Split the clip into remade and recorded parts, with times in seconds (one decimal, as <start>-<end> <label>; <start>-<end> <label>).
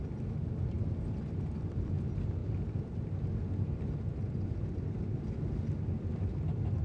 0.0-2.4 recorded; 2.4-4.8 remade; 4.8-6.8 recorded